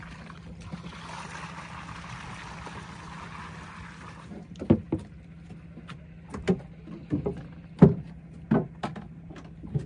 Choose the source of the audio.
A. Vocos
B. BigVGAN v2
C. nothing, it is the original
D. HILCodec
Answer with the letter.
C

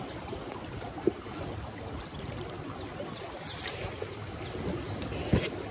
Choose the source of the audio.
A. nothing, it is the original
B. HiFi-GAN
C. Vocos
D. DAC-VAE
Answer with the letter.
A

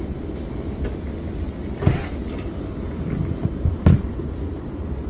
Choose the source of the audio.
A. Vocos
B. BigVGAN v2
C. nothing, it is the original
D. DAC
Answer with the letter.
C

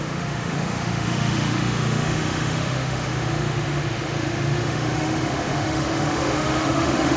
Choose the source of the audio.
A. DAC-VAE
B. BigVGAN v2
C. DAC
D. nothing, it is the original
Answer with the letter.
A